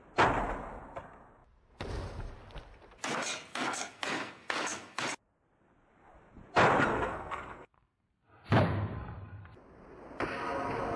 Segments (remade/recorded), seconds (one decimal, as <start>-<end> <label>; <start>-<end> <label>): 0.0-3.5 recorded; 3.5-5.0 remade; 5.0-6.9 recorded; 6.9-8.0 remade; 8.0-11.0 recorded